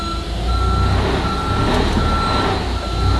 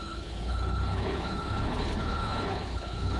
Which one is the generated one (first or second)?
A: second